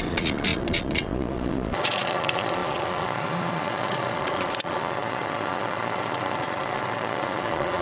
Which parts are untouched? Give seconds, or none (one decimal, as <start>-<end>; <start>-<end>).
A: none